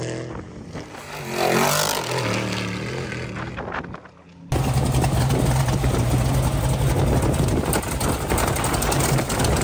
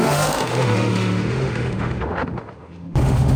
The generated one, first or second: second